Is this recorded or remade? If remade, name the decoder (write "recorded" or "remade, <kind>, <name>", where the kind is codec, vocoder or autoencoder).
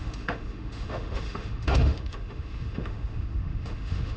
remade, autoencoder, DAC-VAE